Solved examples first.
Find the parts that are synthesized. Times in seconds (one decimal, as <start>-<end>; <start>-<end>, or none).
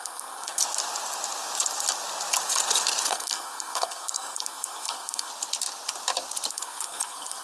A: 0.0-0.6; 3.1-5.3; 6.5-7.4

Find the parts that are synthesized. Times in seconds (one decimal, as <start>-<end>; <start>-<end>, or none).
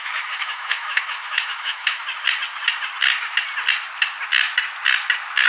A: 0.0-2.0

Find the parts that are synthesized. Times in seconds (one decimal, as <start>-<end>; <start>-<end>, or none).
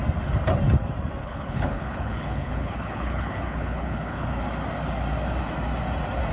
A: 1.2-4.4